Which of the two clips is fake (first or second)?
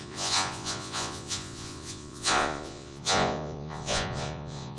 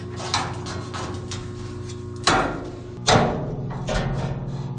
first